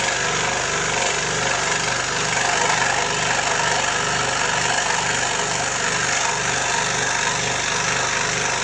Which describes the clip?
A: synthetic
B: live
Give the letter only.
B